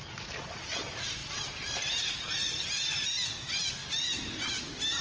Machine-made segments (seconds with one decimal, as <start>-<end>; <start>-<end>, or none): none